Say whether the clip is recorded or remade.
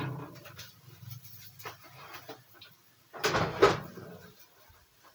remade